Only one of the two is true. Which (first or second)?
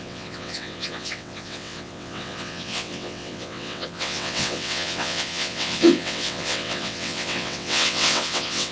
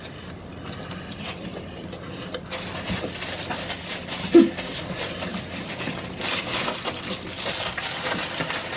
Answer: second